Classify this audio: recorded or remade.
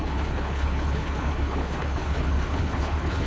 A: remade